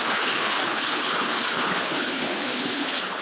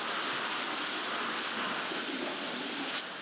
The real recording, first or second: second